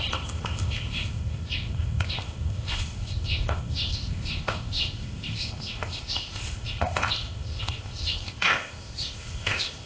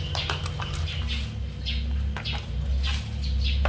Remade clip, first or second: first